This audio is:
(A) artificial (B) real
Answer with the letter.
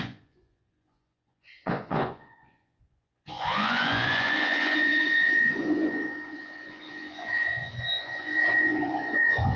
A